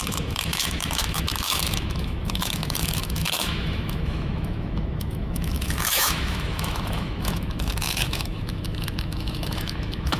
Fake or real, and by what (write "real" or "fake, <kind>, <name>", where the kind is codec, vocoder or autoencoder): fake, autoencoder, DAC-VAE